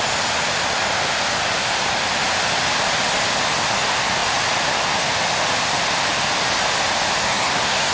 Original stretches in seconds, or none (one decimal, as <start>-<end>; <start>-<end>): 0.0-7.2